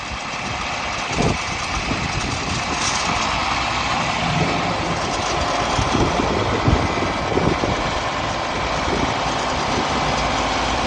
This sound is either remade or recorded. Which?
recorded